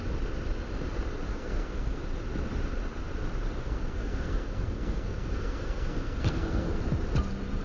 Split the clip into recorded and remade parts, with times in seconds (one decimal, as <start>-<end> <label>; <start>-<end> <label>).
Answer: 0.0-1.3 recorded; 1.3-2.0 remade; 2.0-3.6 recorded; 3.6-6.8 remade; 6.8-7.6 recorded

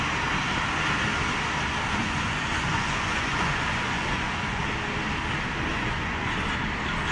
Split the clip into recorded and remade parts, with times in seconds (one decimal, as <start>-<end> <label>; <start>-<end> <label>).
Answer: 0.0-2.0 recorded; 2.0-4.6 remade; 4.6-5.7 recorded; 5.7-6.3 remade; 6.3-7.1 recorded

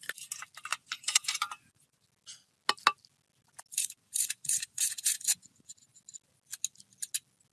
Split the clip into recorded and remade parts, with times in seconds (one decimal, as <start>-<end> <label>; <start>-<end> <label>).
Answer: 0.0-0.7 recorded; 0.7-2.0 remade; 2.0-3.7 recorded; 3.7-6.0 remade; 6.0-7.5 recorded

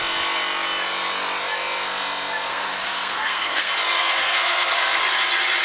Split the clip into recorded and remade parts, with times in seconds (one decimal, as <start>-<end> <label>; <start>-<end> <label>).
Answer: 0.0-2.5 recorded; 2.5-3.7 remade; 3.7-4.2 recorded; 4.2-5.0 remade; 5.0-5.6 recorded